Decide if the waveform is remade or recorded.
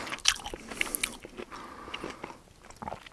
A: recorded